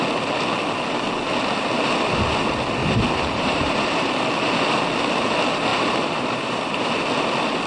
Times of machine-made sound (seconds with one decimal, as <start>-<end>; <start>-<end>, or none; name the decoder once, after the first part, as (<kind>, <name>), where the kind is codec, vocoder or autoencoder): 2.8-4.1 (vocoder, BigVGAN v2); 5.7-6.9